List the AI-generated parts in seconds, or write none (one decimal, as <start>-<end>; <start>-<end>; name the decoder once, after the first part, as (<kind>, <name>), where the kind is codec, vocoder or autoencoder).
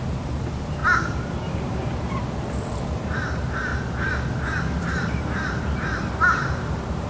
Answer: 0.0-3.7 (vocoder, BigVGAN v2); 4.8-7.1